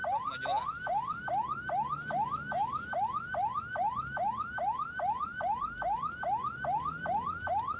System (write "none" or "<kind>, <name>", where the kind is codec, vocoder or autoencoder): none